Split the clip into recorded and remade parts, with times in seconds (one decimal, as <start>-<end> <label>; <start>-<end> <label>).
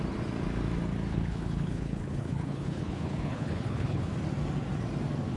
0.0-1.1 recorded; 1.1-4.1 remade; 4.1-5.4 recorded